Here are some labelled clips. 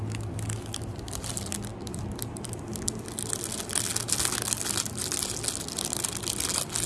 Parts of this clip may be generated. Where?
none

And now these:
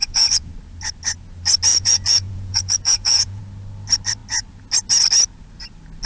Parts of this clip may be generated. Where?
0.0-0.5 (vocoder, Vocos); 1.7-3.4

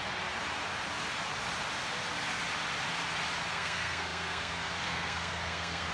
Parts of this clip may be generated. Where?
3.5-5.9 (codec, SNAC)

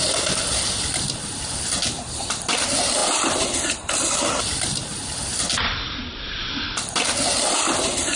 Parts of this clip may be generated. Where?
none

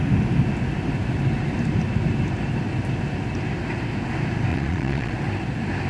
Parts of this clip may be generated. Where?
4.5-5.1 (vocoder, Vocos)